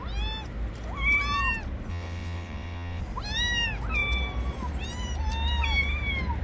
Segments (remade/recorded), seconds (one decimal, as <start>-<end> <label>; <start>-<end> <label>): 0.0-1.9 recorded; 1.9-3.0 remade; 3.0-6.4 recorded